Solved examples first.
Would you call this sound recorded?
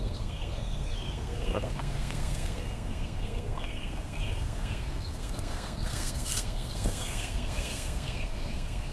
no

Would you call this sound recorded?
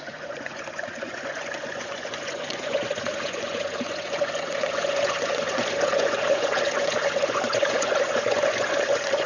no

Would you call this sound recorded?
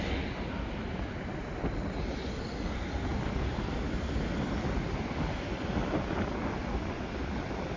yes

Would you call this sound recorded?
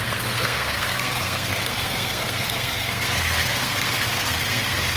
no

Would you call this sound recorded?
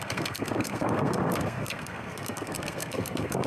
no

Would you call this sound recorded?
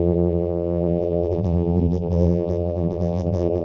no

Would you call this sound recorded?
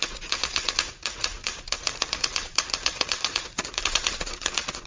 no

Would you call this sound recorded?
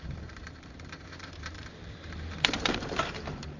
no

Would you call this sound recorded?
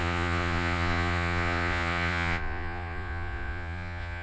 no